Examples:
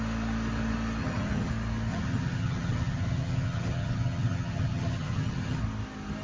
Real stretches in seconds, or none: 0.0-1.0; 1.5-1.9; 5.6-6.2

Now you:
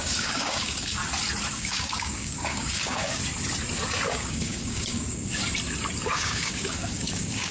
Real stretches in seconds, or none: 1.0-1.5; 3.2-4.1; 5.4-6.0

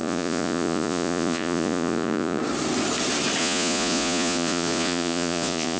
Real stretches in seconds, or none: 2.4-3.4

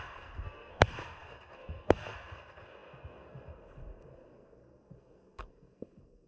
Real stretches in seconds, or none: none

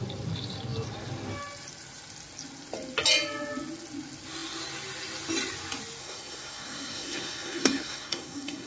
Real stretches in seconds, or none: 0.0-6.0

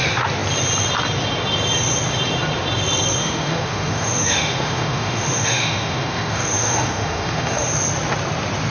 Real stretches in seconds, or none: 0.0-3.2; 7.7-8.7

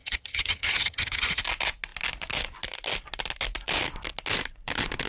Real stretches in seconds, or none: 1.4-5.1